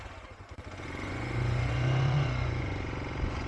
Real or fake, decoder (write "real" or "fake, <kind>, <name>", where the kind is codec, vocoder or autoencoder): fake, vocoder, Vocos